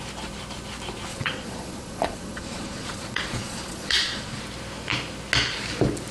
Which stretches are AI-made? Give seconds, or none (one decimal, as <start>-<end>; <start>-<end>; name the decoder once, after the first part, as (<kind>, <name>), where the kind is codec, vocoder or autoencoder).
1.1-4.4 (vocoder, Vocos)